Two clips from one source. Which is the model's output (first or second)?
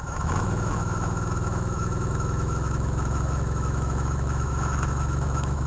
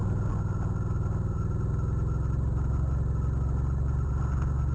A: first